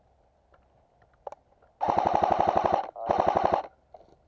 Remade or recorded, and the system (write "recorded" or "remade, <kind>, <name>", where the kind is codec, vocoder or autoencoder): recorded